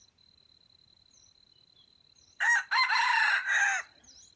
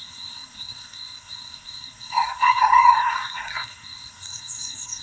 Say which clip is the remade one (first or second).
second